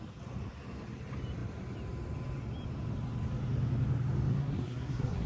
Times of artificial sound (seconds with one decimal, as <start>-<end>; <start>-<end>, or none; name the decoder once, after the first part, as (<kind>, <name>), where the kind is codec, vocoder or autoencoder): 4.3-5.3 (codec, SNAC)